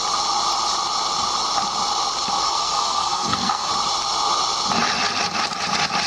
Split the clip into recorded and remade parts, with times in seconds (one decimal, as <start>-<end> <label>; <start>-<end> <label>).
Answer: 0.0-2.4 recorded; 2.4-3.7 remade; 3.7-6.1 recorded